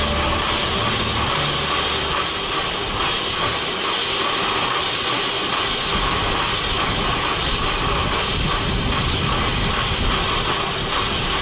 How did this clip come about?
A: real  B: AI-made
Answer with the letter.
A